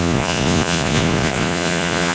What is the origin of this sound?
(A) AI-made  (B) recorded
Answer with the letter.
A